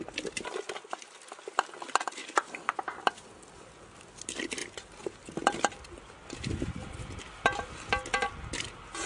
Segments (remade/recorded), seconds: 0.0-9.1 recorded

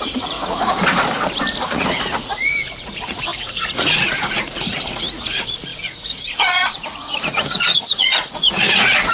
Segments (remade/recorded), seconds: 0.0-0.8 remade; 0.8-1.6 recorded; 1.6-9.1 remade

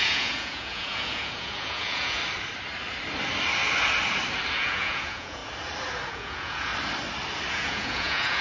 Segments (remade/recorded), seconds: 0.0-2.2 remade; 2.2-4.5 recorded; 4.5-5.4 remade; 5.4-6.1 recorded; 6.1-6.7 remade; 6.7-7.5 recorded; 7.5-8.4 remade

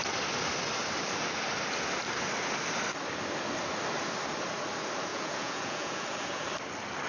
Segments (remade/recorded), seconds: 0.0-5.1 recorded; 5.1-6.4 remade; 6.4-7.1 recorded

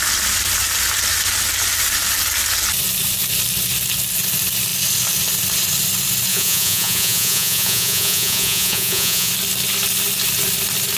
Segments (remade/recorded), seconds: 0.0-6.3 recorded; 6.3-9.3 remade; 9.3-11.0 recorded

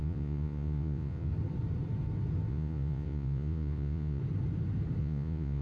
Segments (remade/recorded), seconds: 0.0-1.3 remade; 1.3-2.5 recorded; 2.5-4.2 remade; 4.2-5.0 recorded; 5.0-5.6 remade

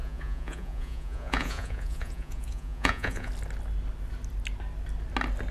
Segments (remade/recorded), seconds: 0.0-3.3 remade; 3.3-5.5 recorded

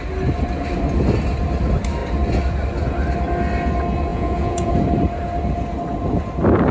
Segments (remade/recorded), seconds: 0.0-4.1 recorded; 4.1-4.7 remade; 4.7-6.7 recorded